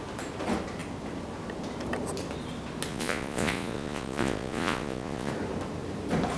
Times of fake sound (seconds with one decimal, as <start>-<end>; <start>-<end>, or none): 2.9-5.3